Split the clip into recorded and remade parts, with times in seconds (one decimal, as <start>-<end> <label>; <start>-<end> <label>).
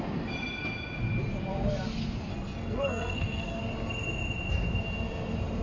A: 0.0-2.3 recorded; 2.3-3.6 remade; 3.6-5.6 recorded